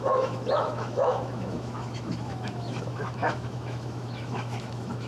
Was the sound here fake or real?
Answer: fake